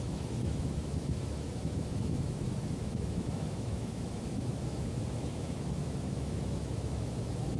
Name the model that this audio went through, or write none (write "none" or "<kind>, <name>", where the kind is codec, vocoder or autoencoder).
autoencoder, DAC-VAE